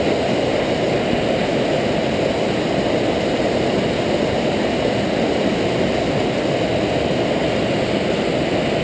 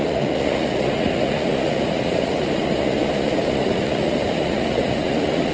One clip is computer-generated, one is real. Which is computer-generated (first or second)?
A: second